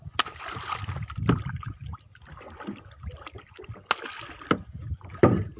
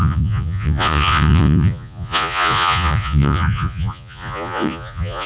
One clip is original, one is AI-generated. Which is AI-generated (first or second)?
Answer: second